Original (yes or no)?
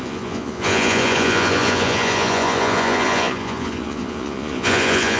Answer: no